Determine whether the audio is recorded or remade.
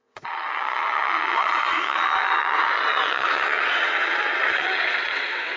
remade